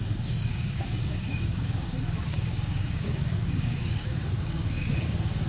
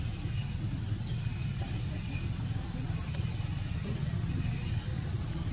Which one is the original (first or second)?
second